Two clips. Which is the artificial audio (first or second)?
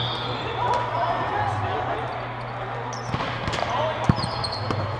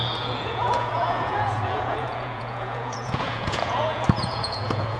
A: second